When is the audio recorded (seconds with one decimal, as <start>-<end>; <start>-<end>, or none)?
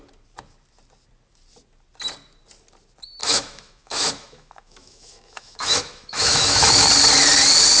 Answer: 0.0-3.2; 6.7-7.8